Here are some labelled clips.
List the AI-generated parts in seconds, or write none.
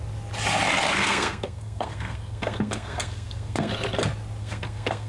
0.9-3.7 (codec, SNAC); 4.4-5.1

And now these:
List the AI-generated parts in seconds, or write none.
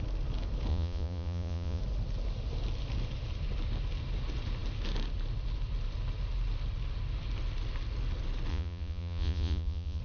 0.7-1.8 (vocoder, Vocos); 8.5-10.0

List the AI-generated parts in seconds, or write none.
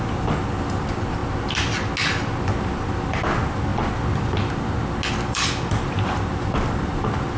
0.0-1.2 (vocoder, BigVGAN v2); 2.6-3.7; 5.1-7.4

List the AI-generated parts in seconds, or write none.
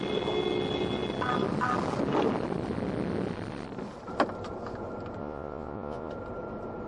5.2-6.1 (vocoder, Vocos)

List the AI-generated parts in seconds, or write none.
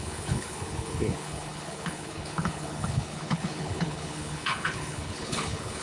0.0-5.8 (codec, HILCodec)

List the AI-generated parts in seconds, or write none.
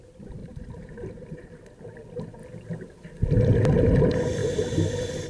0.4-1.5 (vocoder, BigVGAN v2); 4.4-5.3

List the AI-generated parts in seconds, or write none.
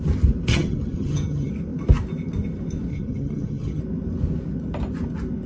0.5-1.5 (vocoder, HiFi-GAN); 2.9-3.8